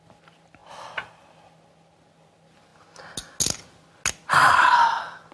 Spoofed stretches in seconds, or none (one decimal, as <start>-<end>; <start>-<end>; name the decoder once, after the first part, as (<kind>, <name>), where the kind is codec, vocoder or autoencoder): none